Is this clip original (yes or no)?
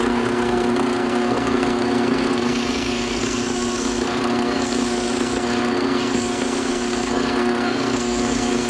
no